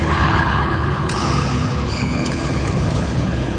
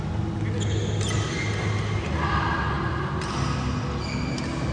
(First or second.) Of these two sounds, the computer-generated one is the first